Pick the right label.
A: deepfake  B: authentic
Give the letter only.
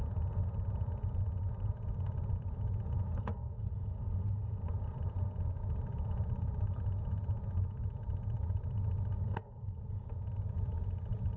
A